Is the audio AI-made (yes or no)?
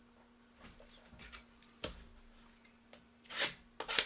no